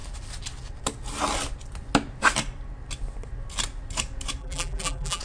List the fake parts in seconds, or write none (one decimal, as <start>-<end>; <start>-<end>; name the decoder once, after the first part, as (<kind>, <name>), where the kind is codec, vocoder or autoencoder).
4.4-5.2 (vocoder, BigVGAN v2)